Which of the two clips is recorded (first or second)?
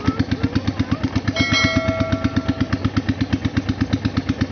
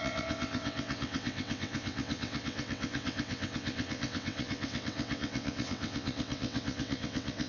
first